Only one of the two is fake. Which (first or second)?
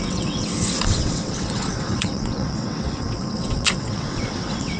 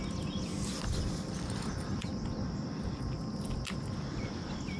first